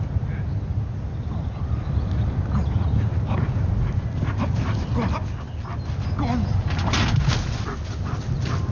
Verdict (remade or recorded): recorded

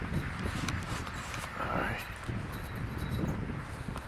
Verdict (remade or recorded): recorded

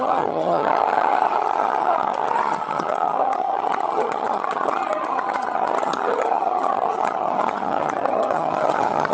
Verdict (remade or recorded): remade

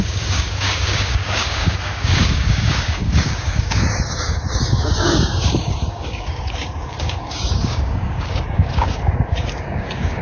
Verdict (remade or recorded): remade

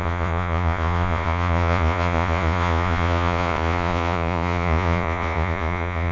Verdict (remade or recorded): remade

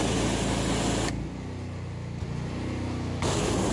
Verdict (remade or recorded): recorded